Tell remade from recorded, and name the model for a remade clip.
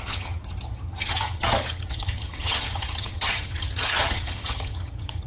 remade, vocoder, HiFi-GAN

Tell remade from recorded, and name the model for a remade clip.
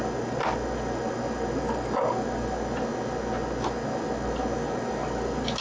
recorded